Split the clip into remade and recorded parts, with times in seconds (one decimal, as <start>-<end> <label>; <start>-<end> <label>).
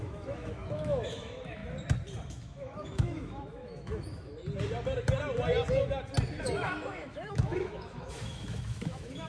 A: 0.0-1.6 remade; 1.6-2.3 recorded; 2.3-4.4 remade; 4.4-6.4 recorded; 6.4-9.3 remade